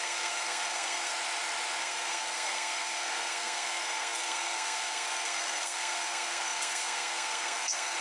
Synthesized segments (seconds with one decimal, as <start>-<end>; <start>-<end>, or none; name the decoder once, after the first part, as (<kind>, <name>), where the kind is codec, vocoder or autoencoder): 0.0-1.1 (codec, SNAC); 1.8-8.0